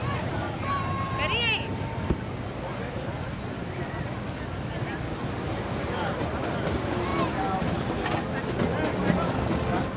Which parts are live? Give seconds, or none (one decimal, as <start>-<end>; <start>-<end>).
0.0-10.0